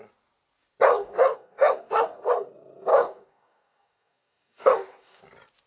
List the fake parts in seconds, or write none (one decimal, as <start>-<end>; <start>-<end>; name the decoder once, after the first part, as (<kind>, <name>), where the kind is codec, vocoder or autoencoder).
0.9-2.3 (codec, DAC); 2.9-5.2